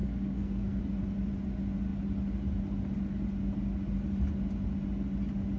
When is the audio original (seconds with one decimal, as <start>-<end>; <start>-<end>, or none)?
0.8-5.6